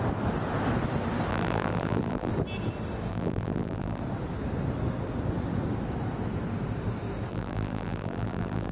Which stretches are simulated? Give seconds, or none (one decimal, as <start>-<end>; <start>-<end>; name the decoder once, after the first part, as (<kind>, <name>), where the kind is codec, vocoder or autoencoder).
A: 1.3-2.3 (vocoder, BigVGAN v2); 3.1-4.0; 7.3-8.7